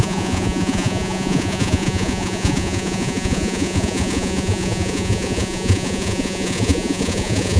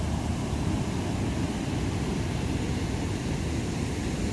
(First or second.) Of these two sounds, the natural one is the second